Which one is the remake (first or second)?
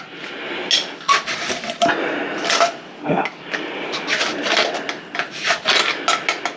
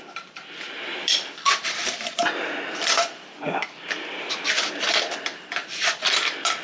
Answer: second